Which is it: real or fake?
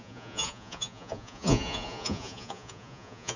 fake